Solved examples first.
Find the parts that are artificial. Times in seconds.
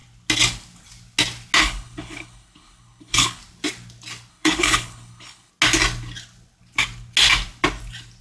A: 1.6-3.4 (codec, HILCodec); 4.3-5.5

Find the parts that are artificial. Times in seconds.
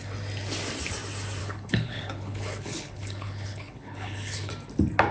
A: 1.4-4.5 (codec, HILCodec)